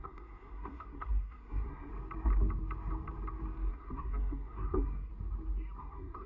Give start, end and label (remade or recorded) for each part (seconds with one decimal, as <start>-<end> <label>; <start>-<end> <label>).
0.0-1.9 remade; 1.9-3.7 recorded; 3.7-5.1 remade; 5.1-5.8 recorded; 5.8-6.3 remade

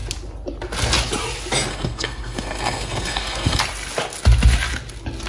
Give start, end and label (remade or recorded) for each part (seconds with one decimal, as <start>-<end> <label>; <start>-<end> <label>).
0.0-1.7 recorded; 1.7-3.6 remade; 3.6-5.3 recorded

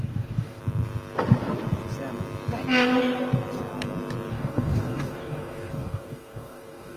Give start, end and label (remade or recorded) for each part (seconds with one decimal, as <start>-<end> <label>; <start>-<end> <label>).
0.0-0.6 remade; 0.6-4.3 recorded; 4.3-7.0 remade